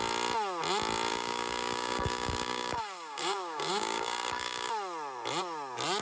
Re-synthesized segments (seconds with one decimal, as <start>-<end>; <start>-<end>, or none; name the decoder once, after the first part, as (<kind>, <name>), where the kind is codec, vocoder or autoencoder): 1.1-4.7 (codec, DAC)